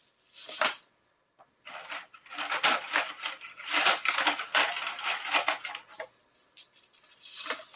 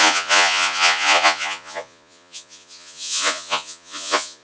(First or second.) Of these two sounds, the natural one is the first